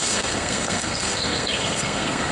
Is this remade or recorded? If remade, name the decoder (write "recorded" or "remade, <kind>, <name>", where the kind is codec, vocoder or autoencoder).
remade, codec, SNAC